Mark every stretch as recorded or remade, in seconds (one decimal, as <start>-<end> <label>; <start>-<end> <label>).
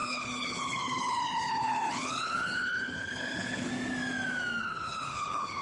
0.0-3.7 remade; 3.7-4.6 recorded; 4.6-5.6 remade